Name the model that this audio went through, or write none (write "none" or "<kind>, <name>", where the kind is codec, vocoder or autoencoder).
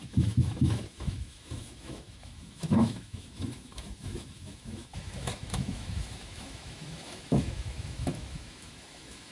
autoencoder, DAC-VAE